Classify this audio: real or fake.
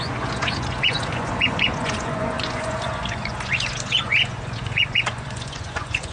fake